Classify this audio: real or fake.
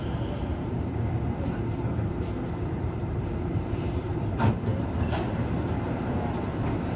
fake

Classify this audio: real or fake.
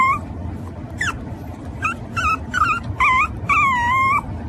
real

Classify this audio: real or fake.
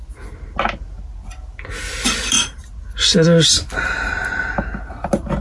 real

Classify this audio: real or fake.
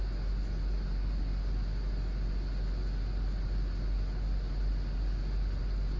real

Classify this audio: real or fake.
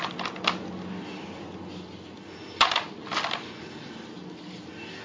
real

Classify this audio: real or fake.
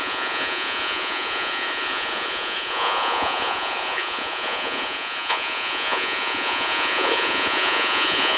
fake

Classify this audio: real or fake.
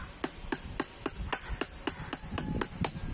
real